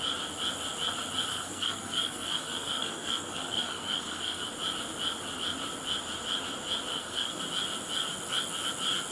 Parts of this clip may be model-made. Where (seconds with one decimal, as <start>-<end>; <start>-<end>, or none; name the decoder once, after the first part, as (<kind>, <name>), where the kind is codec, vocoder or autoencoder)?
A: 1.3-4.5 (codec, SNAC); 6.9-7.4